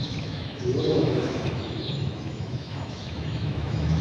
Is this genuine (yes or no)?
no